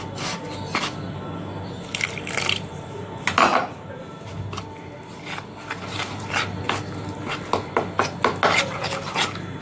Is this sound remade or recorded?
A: recorded